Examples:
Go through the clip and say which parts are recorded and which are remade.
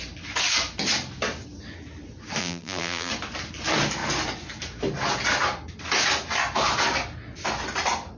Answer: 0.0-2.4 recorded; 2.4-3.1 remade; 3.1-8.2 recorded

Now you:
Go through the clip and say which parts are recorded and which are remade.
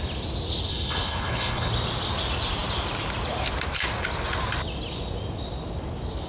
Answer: 0.0-0.7 recorded; 0.7-1.7 remade; 1.7-6.3 recorded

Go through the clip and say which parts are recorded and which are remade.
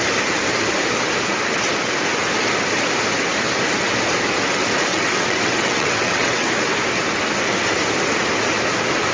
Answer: 0.0-4.9 recorded; 4.9-6.5 remade; 6.5-9.1 recorded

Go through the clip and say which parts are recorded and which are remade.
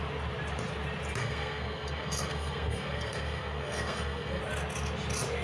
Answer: 0.0-1.2 recorded; 1.2-4.4 remade; 4.4-5.4 recorded